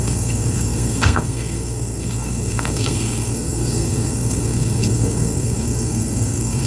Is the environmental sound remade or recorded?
remade